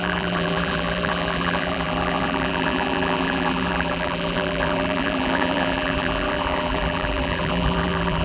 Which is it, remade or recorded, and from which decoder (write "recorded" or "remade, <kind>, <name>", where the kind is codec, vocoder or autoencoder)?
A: remade, vocoder, BigVGAN v2